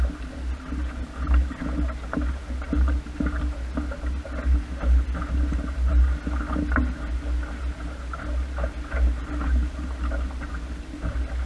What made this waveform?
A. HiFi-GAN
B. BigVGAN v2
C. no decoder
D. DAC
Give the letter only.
C